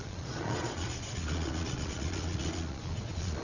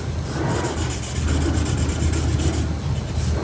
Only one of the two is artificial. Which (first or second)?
first